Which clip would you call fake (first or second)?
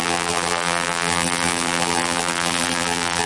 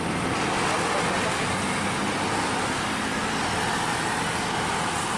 first